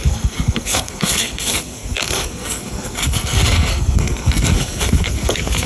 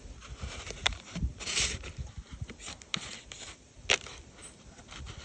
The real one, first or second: second